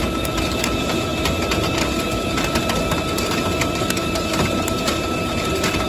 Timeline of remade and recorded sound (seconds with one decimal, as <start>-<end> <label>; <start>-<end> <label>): 0.0-5.9 remade